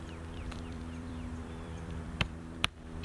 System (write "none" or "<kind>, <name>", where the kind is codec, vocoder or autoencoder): vocoder, BigVGAN v2